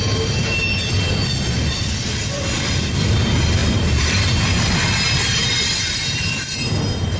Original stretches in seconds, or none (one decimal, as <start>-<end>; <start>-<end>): 0.0-3.6; 6.7-7.2